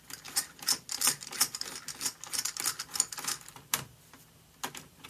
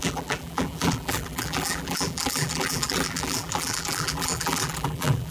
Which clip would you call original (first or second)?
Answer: first